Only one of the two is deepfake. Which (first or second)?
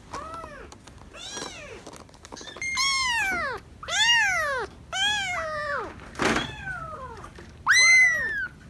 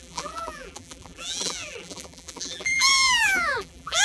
second